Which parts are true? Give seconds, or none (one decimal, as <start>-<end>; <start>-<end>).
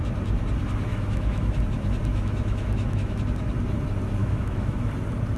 0.0-0.9; 1.6-2.1; 3.2-4.2; 4.9-5.4